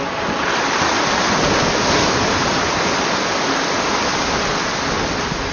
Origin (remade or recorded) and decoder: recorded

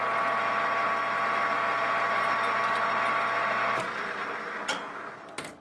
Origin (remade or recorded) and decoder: recorded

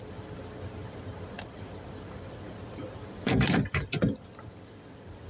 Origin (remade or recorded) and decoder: remade, vocoder, BigVGAN v2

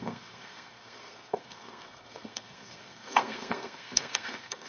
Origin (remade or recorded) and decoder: remade, codec, SNAC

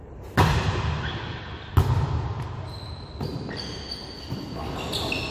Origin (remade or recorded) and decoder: recorded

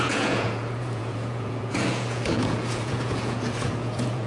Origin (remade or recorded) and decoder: remade, vocoder, Vocos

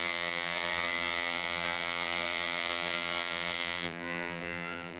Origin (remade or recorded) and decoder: remade, vocoder, BigVGAN v2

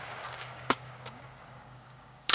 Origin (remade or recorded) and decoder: remade, codec, DAC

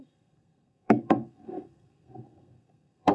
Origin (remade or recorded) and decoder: remade, codec, SNAC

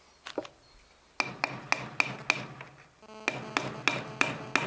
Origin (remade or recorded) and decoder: recorded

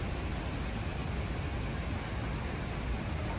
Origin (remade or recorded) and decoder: recorded